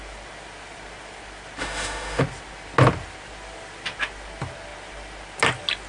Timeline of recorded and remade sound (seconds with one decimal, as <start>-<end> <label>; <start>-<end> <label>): 0.0-1.6 recorded; 1.6-2.2 remade; 2.2-5.9 recorded